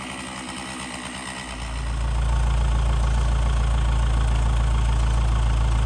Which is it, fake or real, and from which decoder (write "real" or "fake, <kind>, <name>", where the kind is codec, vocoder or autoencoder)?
real